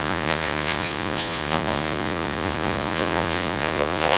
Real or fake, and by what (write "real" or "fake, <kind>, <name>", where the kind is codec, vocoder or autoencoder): fake, vocoder, Vocos